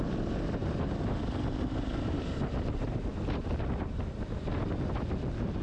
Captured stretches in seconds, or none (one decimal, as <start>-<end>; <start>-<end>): 0.0-5.6